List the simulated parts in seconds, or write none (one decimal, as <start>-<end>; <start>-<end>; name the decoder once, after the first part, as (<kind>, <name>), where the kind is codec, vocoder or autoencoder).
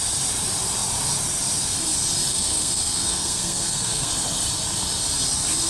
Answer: 2.3-4.1 (codec, SNAC)